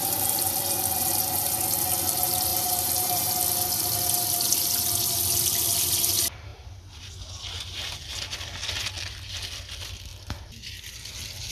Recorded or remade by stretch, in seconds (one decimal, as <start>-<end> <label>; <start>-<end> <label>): 0.0-2.5 recorded; 2.5-3.3 remade; 3.3-11.5 recorded